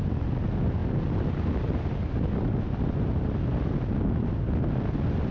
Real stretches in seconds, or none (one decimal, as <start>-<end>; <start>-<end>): 0.0-5.3